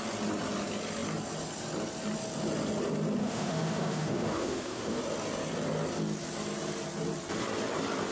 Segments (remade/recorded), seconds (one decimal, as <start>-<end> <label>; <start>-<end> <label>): 0.0-3.2 recorded; 3.2-5.0 remade; 5.0-8.1 recorded